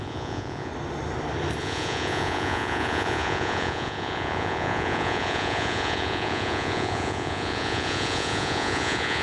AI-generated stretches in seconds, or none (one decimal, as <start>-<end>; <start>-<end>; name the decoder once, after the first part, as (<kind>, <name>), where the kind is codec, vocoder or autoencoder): 0.0-0.7 (vocoder, Vocos); 1.6-9.2